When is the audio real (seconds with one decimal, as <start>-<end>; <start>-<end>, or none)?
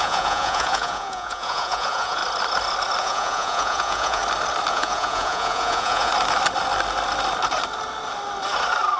2.2-3.0; 4.2-4.7; 6.1-9.0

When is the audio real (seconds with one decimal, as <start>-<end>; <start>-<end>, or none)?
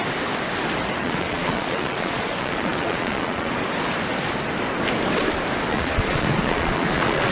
0.0-1.0; 3.5-5.7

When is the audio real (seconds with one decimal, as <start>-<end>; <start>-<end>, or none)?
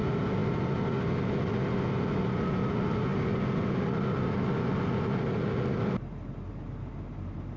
0.0-7.6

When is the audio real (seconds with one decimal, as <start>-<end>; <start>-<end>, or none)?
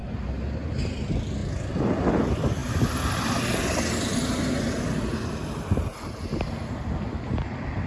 0.0-7.9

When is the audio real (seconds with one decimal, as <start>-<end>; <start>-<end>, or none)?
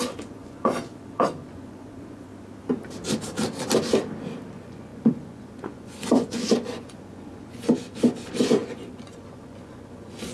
2.3-4.5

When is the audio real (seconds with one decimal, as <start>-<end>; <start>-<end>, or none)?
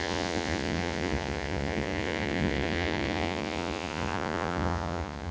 none